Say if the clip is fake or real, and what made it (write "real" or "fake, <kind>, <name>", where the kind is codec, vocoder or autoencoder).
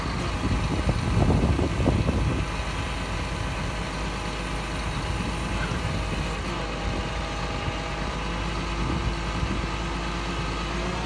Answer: real